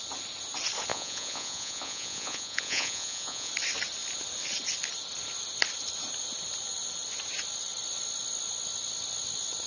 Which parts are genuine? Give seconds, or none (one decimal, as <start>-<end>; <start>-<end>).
0.0-0.9; 3.5-9.7